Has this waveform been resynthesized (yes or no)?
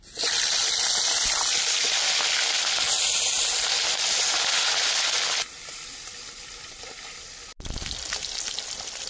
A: no